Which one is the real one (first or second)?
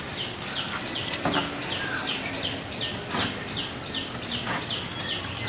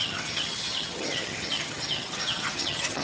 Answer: first